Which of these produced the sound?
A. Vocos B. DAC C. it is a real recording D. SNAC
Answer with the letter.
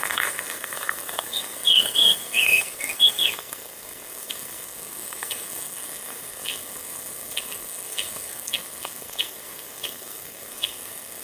D